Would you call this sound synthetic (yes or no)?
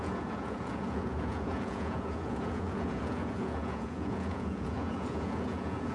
yes